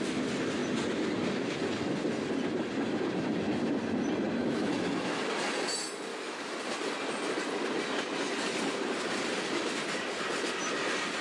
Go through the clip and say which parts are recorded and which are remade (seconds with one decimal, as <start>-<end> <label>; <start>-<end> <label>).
0.0-4.4 recorded; 4.4-5.3 remade; 5.3-6.1 recorded; 6.1-6.6 remade; 6.6-11.2 recorded